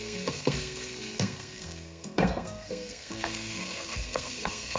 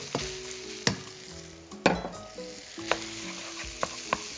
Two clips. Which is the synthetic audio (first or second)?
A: first